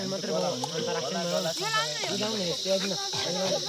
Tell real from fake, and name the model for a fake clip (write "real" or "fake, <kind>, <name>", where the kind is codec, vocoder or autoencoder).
real